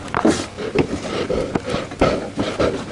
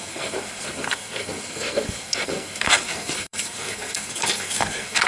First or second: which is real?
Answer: first